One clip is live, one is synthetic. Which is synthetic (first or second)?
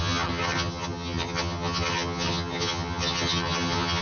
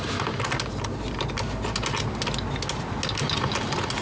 first